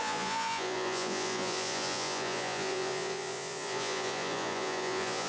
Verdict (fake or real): fake